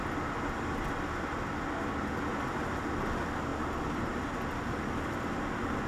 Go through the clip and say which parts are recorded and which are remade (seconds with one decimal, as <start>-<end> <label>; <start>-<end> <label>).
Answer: 0.0-5.9 recorded